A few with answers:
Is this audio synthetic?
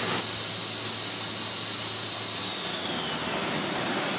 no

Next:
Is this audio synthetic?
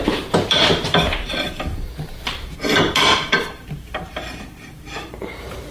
yes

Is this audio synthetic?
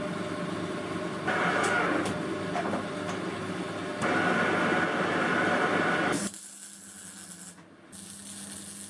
no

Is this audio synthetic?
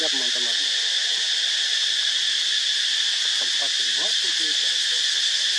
no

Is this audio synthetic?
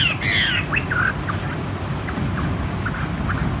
no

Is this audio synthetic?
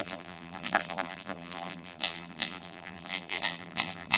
yes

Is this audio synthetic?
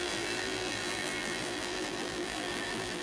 yes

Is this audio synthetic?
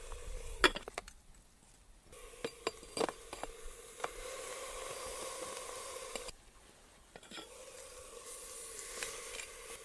no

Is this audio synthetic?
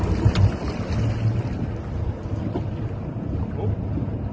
no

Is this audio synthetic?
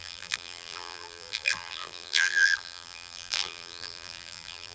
yes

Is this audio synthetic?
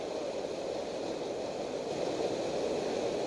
no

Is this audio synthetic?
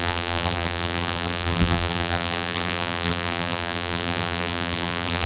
yes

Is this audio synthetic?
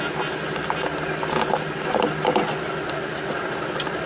no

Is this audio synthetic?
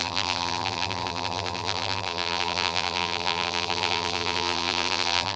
yes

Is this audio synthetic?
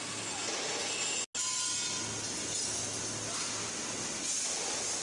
no